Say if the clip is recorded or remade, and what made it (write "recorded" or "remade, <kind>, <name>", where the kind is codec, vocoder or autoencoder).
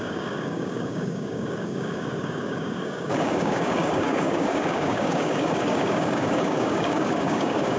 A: remade, codec, DAC